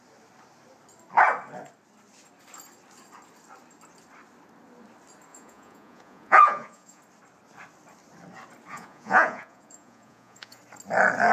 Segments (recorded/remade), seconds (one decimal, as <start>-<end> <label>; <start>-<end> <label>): 0.0-5.3 recorded; 5.3-7.0 remade; 7.0-8.7 recorded; 8.7-10.6 remade; 10.6-11.3 recorded